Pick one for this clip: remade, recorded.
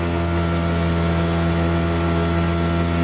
recorded